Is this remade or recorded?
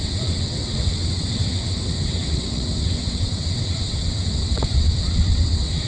remade